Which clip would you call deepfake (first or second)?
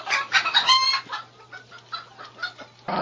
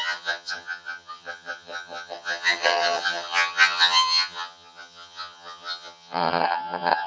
second